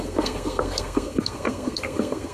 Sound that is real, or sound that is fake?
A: fake